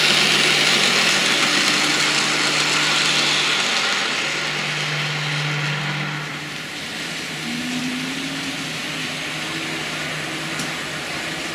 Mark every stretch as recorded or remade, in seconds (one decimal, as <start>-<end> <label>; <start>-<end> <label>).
0.0-6.3 recorded; 6.3-7.8 remade; 7.8-11.5 recorded